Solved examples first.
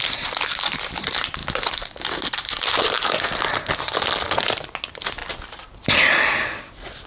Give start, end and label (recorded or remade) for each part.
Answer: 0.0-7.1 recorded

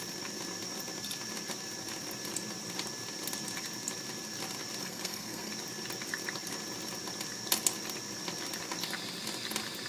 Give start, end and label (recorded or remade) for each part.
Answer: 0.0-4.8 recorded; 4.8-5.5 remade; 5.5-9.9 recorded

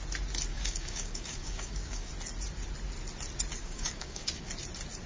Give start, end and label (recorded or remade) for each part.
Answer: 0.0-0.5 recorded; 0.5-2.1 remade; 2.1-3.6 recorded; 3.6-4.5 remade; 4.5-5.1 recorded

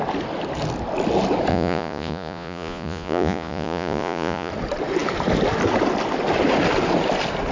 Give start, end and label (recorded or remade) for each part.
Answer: 0.0-1.5 recorded; 1.5-4.5 remade; 4.5-7.5 recorded

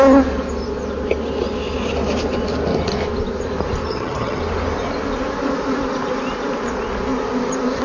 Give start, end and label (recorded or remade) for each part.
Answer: 0.0-3.9 recorded; 3.9-4.4 remade; 4.4-7.8 recorded